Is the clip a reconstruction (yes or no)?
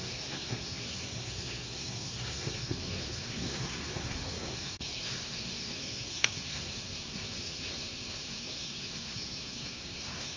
yes